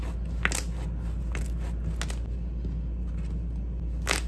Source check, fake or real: real